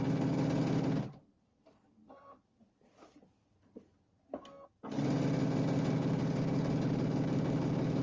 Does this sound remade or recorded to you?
recorded